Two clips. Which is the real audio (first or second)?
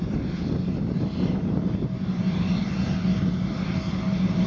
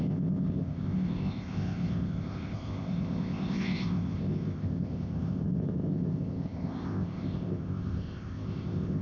first